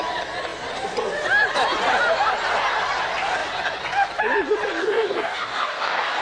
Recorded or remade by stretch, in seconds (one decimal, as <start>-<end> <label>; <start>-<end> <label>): 0.0-4.8 recorded; 4.8-6.2 remade